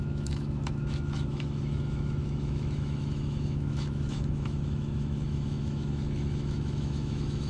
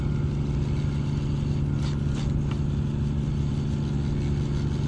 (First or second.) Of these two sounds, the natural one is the second